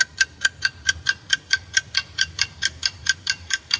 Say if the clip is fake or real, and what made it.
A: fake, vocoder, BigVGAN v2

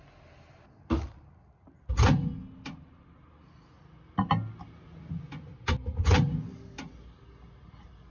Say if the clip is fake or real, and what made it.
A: real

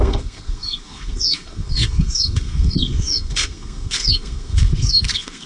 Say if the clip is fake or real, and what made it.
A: fake, codec, SNAC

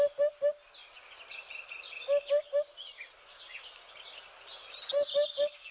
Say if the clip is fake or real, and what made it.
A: real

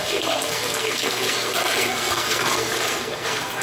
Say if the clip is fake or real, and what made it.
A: fake, codec, SNAC